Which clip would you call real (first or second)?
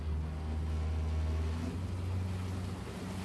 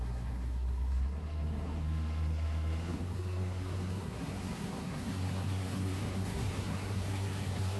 first